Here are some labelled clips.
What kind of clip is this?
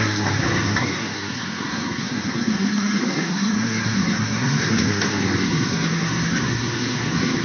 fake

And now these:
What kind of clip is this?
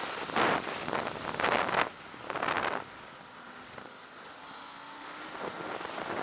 real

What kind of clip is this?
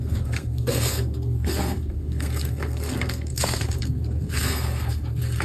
fake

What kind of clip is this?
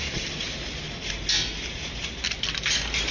real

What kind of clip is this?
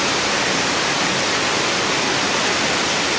real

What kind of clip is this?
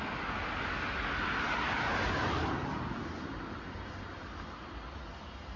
real